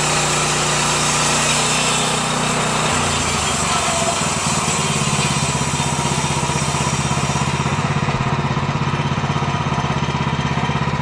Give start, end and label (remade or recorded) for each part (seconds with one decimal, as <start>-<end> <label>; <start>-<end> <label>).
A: 0.0-7.7 recorded; 7.7-9.7 remade; 9.7-11.0 recorded